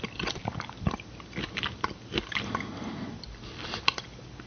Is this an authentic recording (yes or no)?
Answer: yes